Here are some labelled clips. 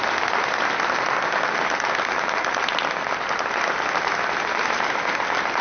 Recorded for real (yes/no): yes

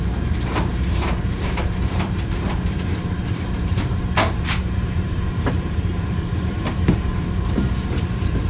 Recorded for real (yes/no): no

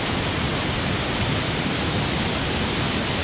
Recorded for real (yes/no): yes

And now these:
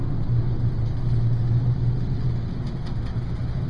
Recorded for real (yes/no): yes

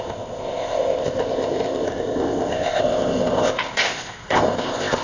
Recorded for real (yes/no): no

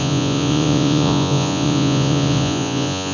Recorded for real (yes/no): no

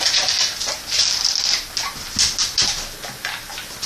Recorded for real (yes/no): yes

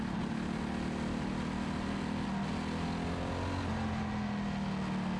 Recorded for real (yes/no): yes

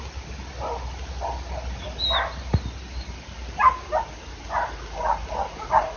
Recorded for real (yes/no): yes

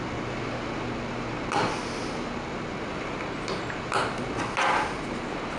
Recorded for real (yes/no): yes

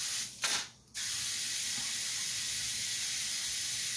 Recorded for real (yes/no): yes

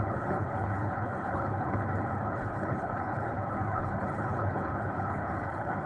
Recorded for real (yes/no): no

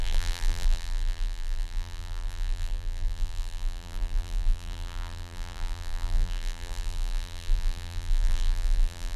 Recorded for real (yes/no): no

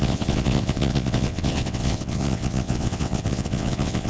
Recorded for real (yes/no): no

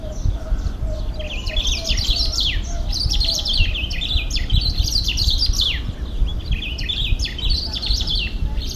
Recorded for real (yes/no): yes